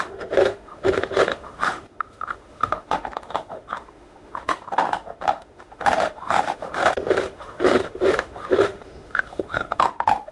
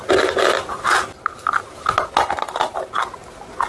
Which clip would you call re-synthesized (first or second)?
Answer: first